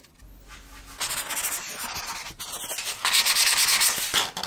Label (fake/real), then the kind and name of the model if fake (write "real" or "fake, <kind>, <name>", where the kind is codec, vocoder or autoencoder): real